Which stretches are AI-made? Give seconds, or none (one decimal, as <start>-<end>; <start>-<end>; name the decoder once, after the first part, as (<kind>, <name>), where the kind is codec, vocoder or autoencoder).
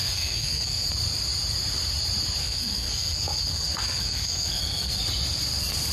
0.0-0.9 (codec, SNAC); 2.4-5.0